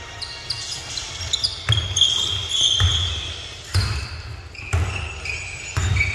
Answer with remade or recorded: recorded